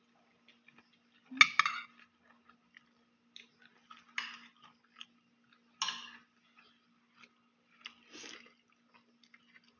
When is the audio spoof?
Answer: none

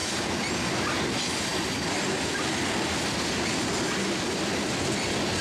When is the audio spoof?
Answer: none